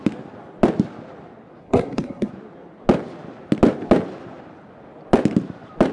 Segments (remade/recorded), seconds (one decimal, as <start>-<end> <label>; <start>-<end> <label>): 0.0-1.6 recorded; 1.6-2.3 remade; 2.3-5.9 recorded